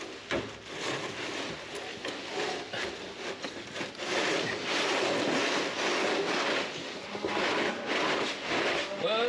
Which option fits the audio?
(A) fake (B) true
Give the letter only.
B